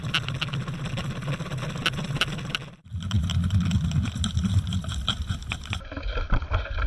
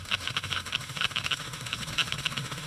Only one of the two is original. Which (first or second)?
first